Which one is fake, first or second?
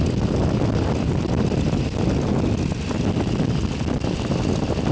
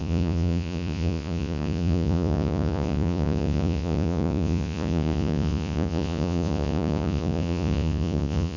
second